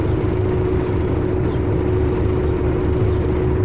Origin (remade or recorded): recorded